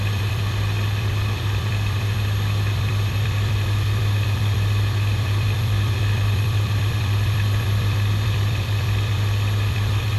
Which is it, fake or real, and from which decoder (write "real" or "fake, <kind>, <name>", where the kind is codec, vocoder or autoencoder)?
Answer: fake, vocoder, BigVGAN v2